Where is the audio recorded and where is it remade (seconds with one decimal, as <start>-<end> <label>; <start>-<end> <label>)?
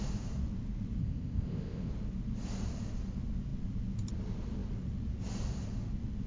0.0-1.0 recorded; 1.0-1.9 remade; 1.9-6.3 recorded